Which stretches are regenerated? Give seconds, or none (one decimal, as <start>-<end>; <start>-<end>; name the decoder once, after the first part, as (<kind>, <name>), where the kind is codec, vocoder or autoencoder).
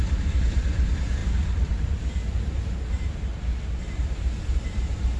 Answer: 0.0-1.2 (vocoder, BigVGAN v2); 2.3-3.3; 3.8-5.2